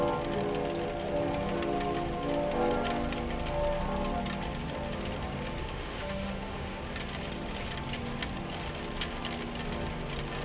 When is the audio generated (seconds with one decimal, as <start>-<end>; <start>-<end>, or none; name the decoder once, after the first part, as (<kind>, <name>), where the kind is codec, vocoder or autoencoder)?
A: 5.6-6.8 (autoencoder, DAC-VAE)